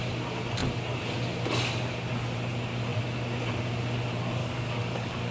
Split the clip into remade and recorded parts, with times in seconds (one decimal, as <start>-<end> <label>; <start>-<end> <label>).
0.0-4.4 recorded; 4.4-5.3 remade